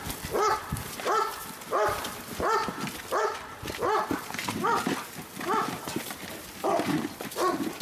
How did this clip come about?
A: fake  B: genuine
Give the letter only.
B